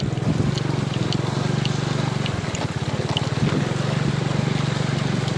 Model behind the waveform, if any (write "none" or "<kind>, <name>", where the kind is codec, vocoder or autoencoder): none